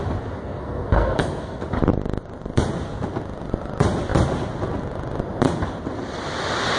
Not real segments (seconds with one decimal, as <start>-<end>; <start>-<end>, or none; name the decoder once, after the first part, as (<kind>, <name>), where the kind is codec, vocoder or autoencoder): 0.4-1.6 (codec, SNAC)